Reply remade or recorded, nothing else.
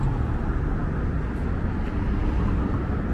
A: recorded